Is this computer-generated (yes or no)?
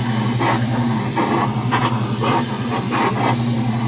no